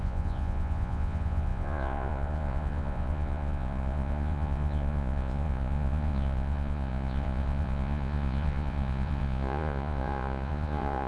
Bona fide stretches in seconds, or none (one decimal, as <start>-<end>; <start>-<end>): none